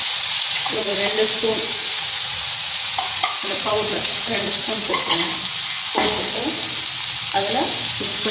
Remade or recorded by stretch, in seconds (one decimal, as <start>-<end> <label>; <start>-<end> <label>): 0.0-0.9 remade; 0.9-1.6 recorded; 1.6-5.3 remade; 5.3-7.9 recorded; 7.9-8.3 remade